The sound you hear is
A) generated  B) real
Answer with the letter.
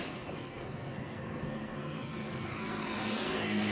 A